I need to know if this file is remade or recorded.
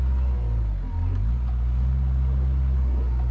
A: recorded